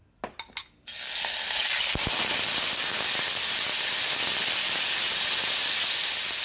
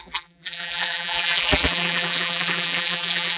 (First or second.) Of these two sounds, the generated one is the second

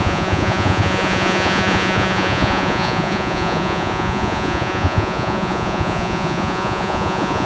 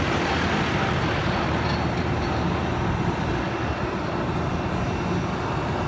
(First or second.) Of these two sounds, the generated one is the first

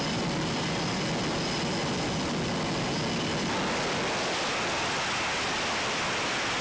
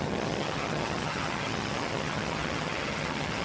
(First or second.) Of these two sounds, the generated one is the second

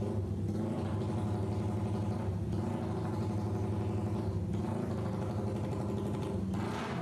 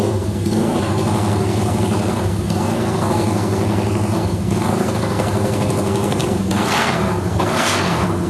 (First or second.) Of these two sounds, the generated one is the second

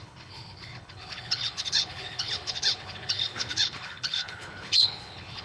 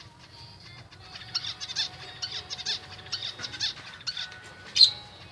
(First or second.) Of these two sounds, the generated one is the first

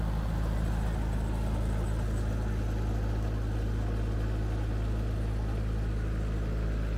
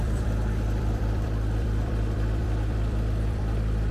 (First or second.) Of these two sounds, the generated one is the second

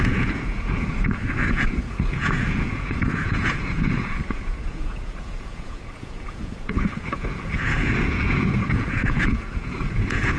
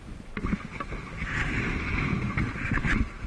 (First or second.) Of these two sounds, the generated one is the first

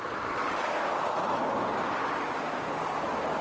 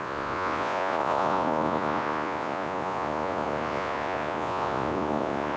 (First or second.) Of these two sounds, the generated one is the second